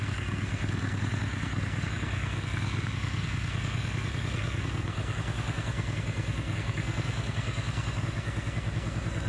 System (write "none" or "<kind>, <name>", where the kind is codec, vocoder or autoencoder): codec, SNAC